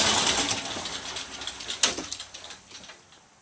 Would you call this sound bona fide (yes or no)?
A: yes